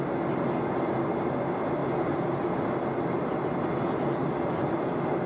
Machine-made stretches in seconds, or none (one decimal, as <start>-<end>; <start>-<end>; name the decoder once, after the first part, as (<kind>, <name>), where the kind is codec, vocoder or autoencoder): none